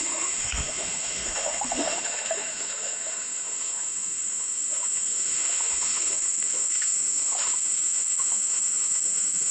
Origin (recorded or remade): remade